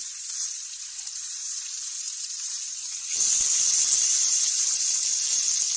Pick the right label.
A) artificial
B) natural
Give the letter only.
A